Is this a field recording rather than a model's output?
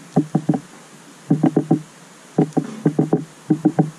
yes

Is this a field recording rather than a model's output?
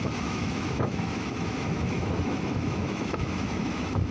no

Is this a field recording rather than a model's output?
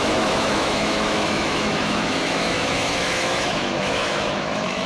no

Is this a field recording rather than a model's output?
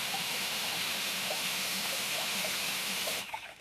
no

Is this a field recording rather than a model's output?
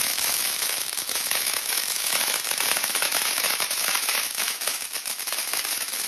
no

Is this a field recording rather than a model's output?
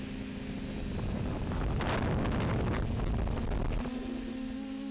yes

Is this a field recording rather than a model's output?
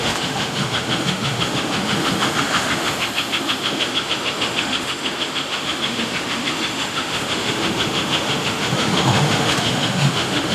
no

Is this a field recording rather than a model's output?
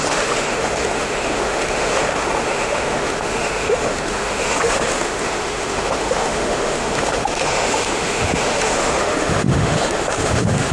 no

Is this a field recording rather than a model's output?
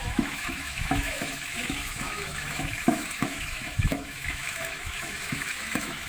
no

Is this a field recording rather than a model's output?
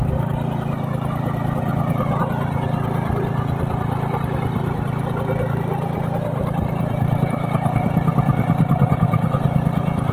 yes